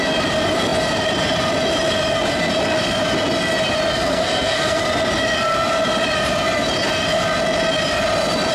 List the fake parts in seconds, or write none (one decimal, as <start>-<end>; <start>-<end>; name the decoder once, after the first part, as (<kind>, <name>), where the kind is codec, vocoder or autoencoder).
4.1-4.8 (codec, SNAC)